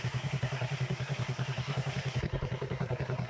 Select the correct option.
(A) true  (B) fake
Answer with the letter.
B